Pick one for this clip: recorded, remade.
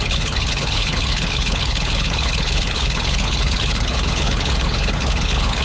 remade